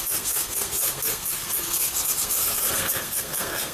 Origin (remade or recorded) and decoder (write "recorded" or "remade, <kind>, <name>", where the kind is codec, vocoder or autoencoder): remade, codec, SNAC